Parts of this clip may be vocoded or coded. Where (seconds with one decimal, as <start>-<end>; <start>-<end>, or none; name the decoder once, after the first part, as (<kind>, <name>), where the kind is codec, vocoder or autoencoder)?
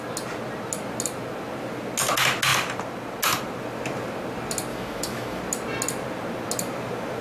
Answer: 4.7-5.4 (autoencoder, DAC-VAE)